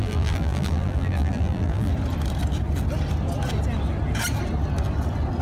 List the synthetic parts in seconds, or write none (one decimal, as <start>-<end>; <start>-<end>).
0.0-1.9